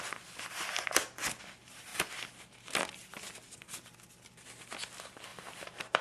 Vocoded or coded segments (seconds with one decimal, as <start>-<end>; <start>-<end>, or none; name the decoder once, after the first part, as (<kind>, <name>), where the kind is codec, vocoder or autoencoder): 5.3-6.0 (vocoder, BigVGAN v2)